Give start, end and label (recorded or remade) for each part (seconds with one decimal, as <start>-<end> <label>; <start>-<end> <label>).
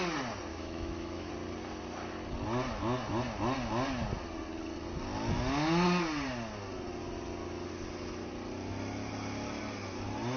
0.0-0.5 recorded; 0.5-1.3 remade; 1.3-10.4 recorded